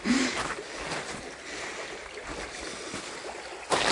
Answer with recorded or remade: recorded